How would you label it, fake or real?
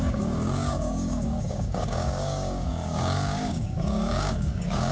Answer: fake